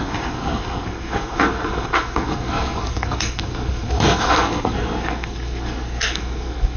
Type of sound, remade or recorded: remade